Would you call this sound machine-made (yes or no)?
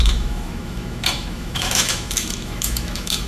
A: yes